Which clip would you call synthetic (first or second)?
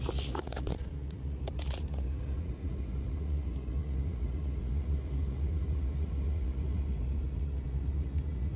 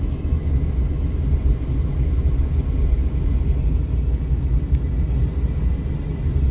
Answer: first